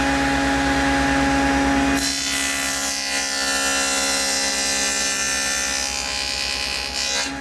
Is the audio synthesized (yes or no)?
no